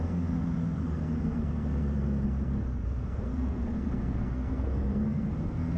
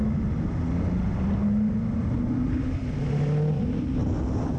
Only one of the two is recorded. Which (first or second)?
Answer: second